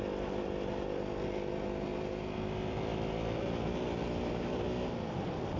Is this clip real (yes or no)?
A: yes